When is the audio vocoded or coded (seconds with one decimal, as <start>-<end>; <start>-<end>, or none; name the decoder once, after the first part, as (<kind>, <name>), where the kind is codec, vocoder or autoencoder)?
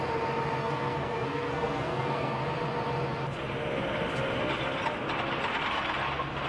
0.6-2.4 (codec, SNAC)